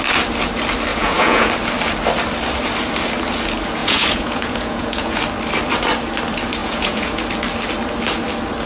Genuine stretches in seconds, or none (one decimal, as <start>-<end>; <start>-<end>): 0.0-0.9; 1.5-3.8; 5.2-6.6; 7.2-8.7